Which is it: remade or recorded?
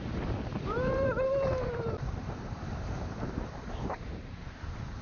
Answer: remade